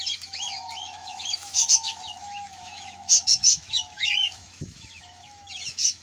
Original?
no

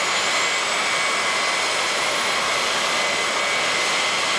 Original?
yes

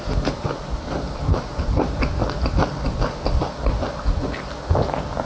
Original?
yes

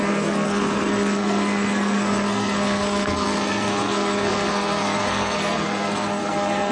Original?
no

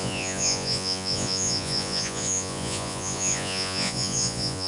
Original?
no